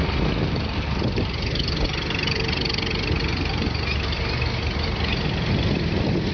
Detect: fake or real real